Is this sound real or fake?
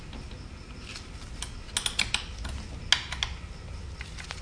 real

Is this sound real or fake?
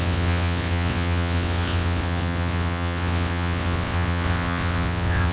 fake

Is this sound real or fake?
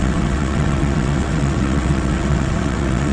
fake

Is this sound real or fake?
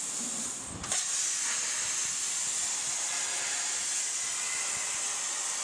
real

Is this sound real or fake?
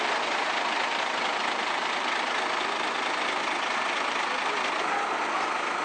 real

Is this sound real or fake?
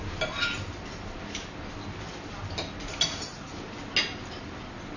real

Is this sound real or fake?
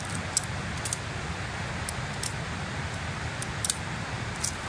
real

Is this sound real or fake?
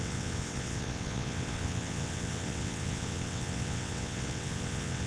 fake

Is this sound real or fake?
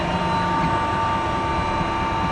real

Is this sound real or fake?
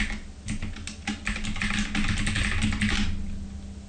real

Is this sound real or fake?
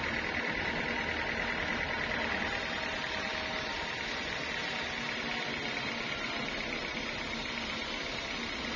real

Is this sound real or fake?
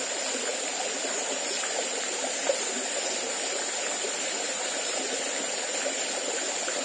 real